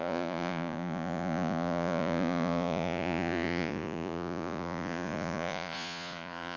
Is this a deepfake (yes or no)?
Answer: yes